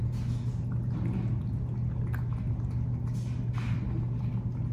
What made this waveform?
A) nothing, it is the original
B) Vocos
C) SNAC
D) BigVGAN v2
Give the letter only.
A